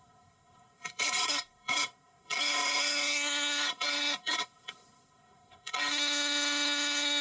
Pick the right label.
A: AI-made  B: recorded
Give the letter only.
A